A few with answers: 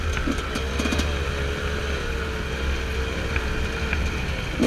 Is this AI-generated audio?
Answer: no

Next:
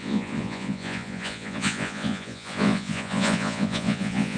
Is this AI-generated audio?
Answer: yes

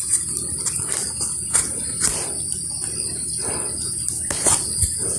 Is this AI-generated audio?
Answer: no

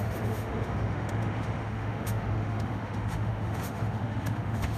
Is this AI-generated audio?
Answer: yes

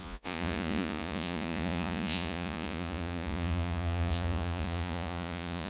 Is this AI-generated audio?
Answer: yes